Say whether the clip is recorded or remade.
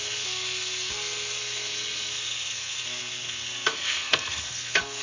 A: remade